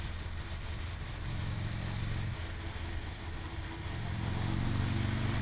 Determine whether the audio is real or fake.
real